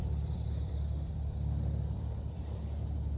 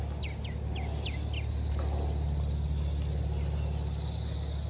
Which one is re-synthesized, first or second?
first